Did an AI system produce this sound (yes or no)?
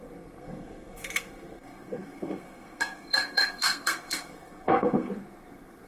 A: yes